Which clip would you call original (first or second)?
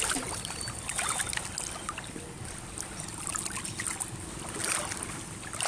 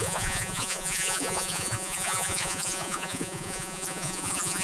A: first